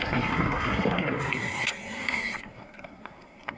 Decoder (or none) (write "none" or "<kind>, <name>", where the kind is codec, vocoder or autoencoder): codec, SNAC